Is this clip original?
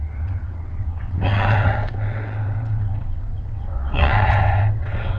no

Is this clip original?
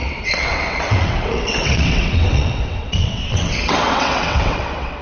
no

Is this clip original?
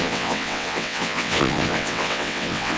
no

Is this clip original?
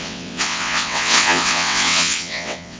no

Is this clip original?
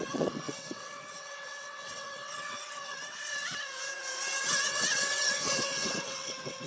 no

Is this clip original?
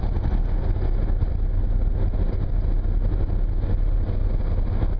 yes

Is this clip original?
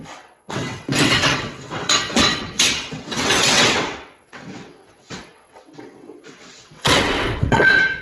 no